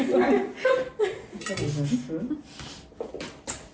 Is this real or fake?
real